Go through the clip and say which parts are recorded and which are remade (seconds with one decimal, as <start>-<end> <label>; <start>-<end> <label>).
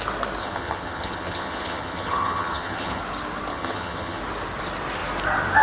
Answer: 0.0-0.4 recorded; 0.4-3.0 remade; 3.0-3.5 recorded; 3.5-4.2 remade; 4.2-5.6 recorded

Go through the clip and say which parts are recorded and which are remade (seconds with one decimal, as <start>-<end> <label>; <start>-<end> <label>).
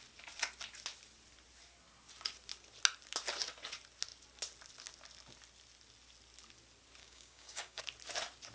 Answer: 0.0-7.0 recorded; 7.0-7.8 remade; 7.8-8.5 recorded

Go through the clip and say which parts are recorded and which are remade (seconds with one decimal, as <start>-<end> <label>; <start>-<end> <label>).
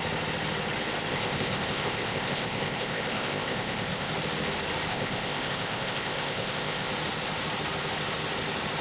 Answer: 0.0-1.1 recorded; 1.1-4.1 remade; 4.1-4.9 recorded; 4.9-6.9 remade; 6.9-8.8 recorded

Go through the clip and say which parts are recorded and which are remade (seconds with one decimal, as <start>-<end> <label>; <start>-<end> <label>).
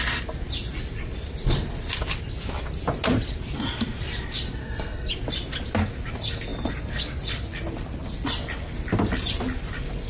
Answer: 0.0-4.6 recorded; 4.6-5.1 remade; 5.1-10.1 recorded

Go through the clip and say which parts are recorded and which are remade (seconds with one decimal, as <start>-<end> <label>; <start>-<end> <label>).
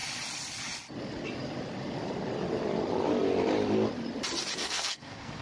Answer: 0.0-4.6 recorded; 4.6-5.4 remade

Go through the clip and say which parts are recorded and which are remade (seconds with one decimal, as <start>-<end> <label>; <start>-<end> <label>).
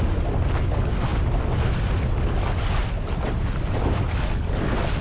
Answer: 0.0-5.0 recorded